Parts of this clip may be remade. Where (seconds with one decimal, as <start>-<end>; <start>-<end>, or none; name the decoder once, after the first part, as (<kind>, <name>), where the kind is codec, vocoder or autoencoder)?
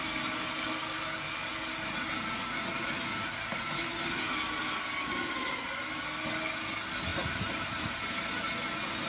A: 7.1-8.0 (vocoder, BigVGAN v2)